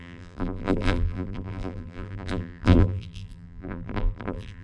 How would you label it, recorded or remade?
remade